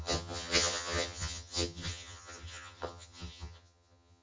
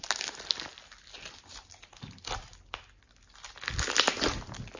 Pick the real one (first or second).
second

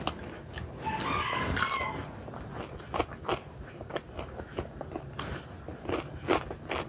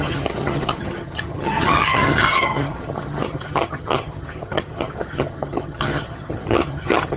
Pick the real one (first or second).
first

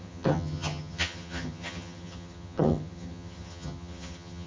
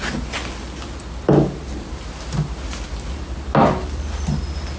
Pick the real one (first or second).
second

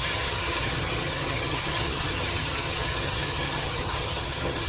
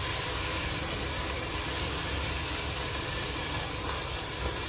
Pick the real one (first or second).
second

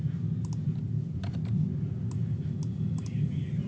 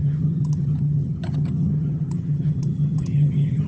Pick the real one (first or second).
first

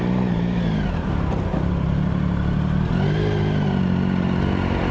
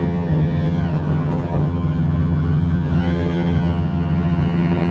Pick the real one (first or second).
first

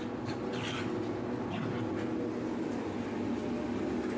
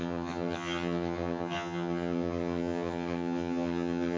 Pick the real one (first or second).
first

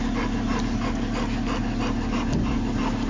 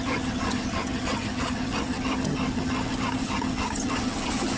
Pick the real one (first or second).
first